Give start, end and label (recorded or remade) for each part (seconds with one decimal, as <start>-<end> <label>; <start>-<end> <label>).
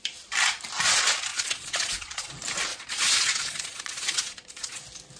0.0-1.3 recorded; 1.3-2.3 remade; 2.3-2.7 recorded; 2.7-4.8 remade; 4.8-5.2 recorded